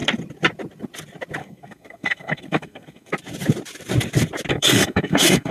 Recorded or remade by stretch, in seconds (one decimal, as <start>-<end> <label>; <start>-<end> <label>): 0.0-1.4 recorded; 1.4-3.1 remade; 3.1-4.5 recorded; 4.5-5.5 remade